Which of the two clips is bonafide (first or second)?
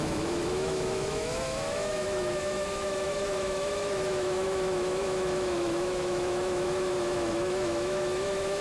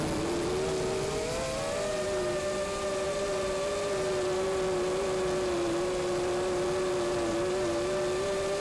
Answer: second